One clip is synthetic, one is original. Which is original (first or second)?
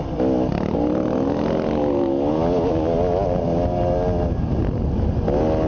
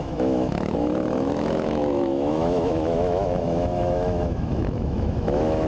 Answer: first